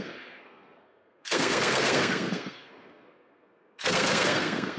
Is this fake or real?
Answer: fake